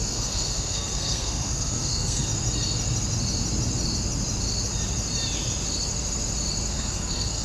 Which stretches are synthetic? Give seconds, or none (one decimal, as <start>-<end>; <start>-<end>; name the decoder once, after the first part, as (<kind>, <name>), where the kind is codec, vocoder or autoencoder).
0.0-2.3 (codec, SNAC); 6.7-7.4